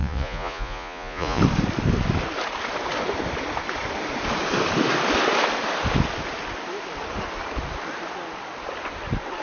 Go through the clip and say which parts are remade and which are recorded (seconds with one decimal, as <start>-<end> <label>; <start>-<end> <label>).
0.0-1.4 remade; 1.4-9.4 recorded